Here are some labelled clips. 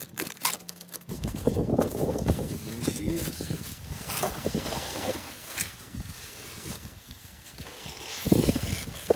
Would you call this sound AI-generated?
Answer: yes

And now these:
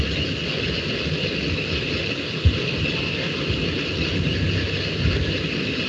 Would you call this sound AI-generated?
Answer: no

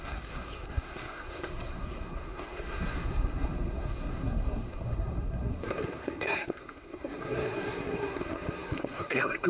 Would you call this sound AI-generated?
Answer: yes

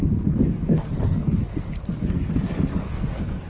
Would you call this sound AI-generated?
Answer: yes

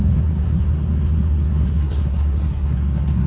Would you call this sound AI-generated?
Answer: yes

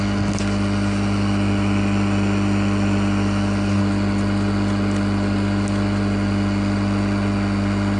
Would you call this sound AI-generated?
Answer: no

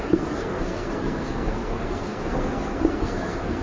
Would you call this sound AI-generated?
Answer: yes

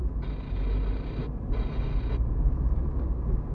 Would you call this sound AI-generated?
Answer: no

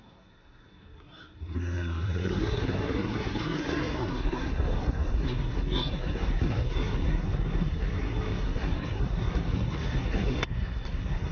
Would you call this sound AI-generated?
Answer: yes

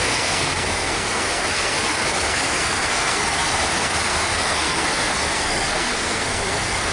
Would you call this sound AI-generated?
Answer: yes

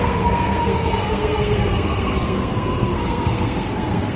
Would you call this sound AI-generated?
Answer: yes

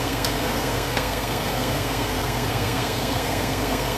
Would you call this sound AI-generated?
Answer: yes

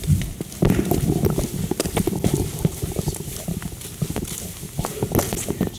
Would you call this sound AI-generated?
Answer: no